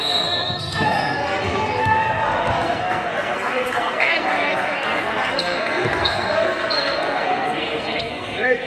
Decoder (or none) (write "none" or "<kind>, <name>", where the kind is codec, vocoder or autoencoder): codec, SNAC